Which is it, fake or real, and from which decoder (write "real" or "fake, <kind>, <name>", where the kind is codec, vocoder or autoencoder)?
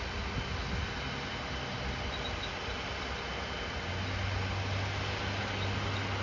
real